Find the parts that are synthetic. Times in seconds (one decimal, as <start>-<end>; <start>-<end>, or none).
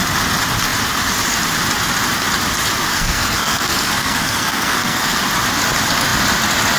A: 2.9-5.2